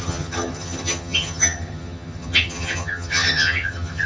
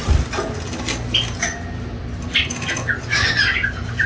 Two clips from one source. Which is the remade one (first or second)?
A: first